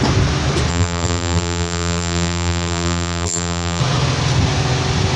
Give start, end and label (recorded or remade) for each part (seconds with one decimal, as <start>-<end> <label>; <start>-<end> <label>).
0.0-0.7 recorded; 0.7-3.8 remade; 3.8-5.2 recorded